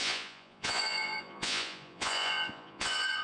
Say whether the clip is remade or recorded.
remade